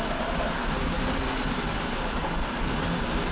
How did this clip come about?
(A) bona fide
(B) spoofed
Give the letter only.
A